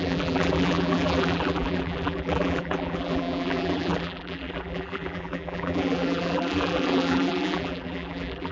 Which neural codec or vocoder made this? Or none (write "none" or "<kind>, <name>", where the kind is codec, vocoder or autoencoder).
vocoder, BigVGAN v2